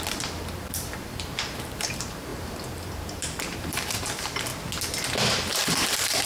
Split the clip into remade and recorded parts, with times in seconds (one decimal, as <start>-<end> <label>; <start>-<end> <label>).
0.0-4.5 remade; 4.5-5.3 recorded; 5.3-6.3 remade